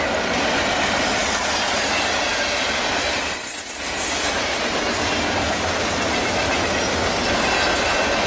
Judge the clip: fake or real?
real